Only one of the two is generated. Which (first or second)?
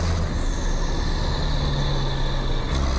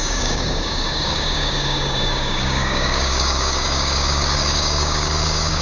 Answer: second